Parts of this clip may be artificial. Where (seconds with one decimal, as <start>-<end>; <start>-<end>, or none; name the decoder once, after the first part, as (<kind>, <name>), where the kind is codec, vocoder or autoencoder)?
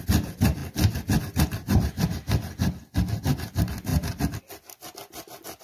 none